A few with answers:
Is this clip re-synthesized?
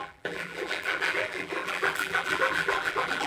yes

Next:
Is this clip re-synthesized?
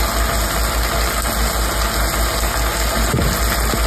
no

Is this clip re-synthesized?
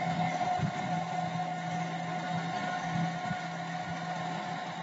no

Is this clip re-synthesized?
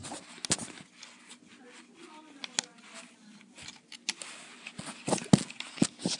no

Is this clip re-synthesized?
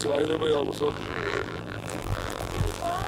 yes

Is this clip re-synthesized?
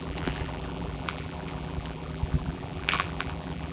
yes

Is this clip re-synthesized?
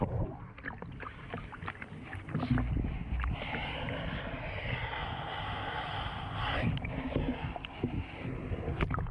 no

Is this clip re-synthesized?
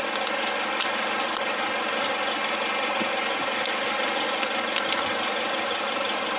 no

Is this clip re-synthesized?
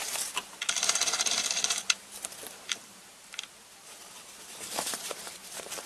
yes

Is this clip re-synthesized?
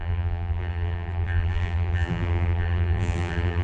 yes